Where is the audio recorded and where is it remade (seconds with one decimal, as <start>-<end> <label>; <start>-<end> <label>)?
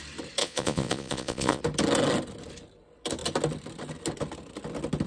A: 0.0-0.4 recorded; 0.4-1.6 remade; 1.6-5.1 recorded